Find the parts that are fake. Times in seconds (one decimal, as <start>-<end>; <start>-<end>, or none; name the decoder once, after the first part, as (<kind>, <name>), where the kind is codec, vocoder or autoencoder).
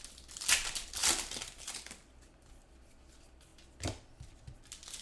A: none